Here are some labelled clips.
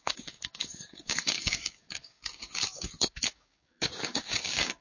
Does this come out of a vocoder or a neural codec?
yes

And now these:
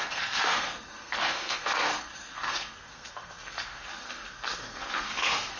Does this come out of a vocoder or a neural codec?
yes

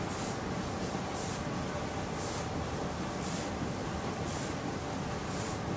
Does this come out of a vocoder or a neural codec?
no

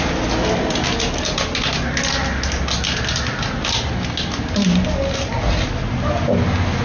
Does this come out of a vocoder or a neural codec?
no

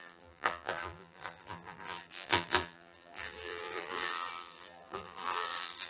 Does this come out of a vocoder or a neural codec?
yes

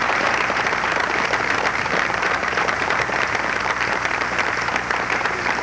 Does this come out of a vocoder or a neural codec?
yes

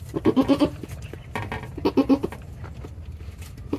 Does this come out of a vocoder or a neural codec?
no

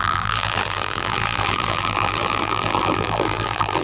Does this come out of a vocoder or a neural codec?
yes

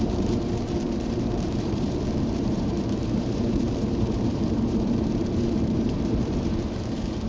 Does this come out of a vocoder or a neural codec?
yes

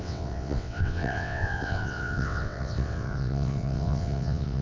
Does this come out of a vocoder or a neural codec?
yes